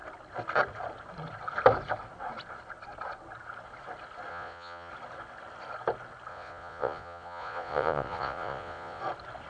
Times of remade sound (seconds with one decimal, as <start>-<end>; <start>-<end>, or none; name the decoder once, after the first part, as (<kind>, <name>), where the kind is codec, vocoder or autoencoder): 4.3-4.9 (vocoder, Vocos); 6.3-9.0